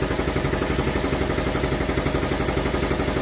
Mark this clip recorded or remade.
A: recorded